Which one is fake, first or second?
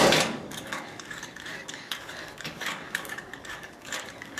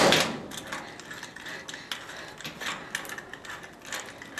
first